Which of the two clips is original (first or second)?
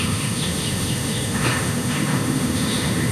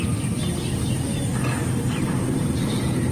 second